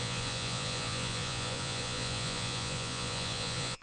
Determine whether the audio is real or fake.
fake